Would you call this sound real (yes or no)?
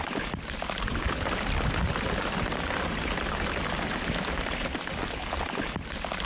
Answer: yes